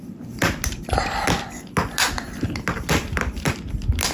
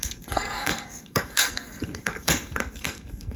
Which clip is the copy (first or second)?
second